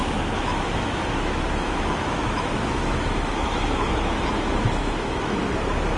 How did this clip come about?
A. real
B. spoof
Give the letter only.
B